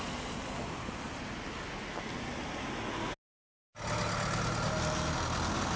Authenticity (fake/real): real